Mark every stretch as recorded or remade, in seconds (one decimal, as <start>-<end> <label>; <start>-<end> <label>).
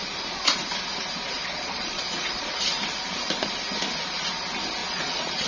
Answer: 0.0-1.4 recorded; 1.4-2.6 remade; 2.6-4.8 recorded; 4.8-5.5 remade